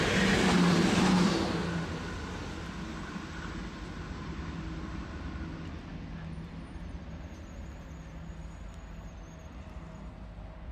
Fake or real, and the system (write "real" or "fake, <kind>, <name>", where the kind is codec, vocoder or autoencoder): real